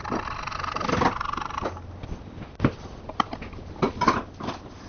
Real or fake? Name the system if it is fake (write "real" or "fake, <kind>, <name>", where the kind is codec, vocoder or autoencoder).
real